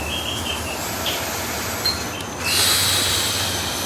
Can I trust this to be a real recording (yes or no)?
yes